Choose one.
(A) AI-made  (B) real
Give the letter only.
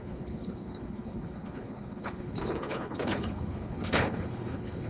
A